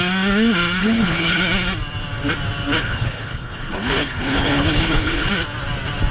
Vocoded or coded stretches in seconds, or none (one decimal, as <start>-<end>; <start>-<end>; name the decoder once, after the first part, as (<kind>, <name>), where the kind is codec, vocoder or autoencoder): 0.8-1.4 (codec, HILCodec); 2.8-5.3